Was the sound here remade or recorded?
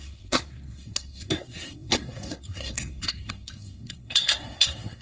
remade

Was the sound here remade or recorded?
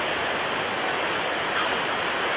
recorded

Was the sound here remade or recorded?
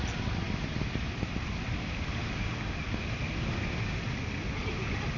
recorded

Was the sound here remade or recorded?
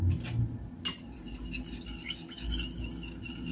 recorded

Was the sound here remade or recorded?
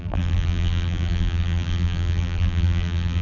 remade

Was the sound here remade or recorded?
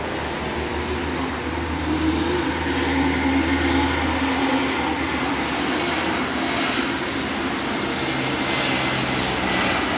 recorded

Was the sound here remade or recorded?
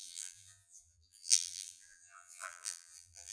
remade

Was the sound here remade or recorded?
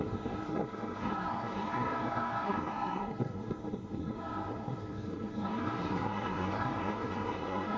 remade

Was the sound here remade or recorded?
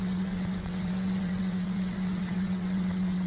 remade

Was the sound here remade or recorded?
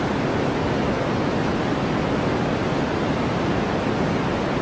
recorded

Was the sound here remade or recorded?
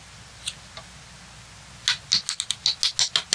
recorded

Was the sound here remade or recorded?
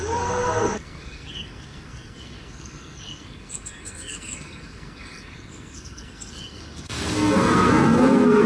remade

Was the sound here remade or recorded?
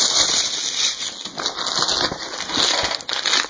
recorded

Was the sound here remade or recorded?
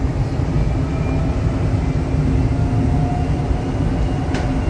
recorded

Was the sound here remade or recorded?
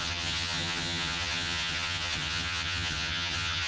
remade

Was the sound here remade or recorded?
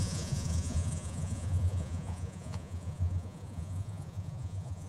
remade